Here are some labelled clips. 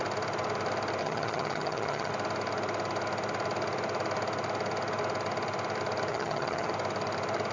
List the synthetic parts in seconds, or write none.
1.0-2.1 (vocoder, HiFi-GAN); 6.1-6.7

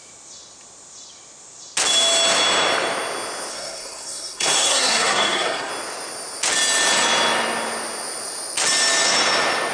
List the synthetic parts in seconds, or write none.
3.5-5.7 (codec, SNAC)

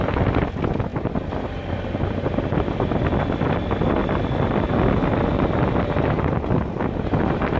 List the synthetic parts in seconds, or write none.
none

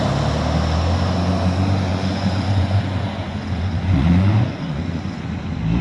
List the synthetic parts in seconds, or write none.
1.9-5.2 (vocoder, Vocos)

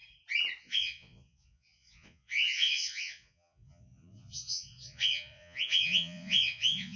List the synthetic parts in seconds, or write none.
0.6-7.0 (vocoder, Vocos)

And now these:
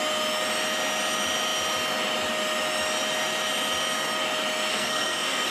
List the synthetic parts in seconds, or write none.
4.7-5.5 (codec, SNAC)

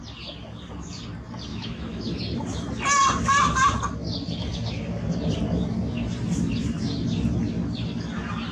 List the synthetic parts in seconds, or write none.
1.5-2.2 (autoencoder, DAC-VAE)